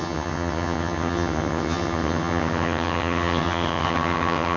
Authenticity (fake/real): fake